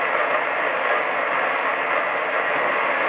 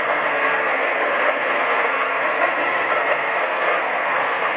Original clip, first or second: first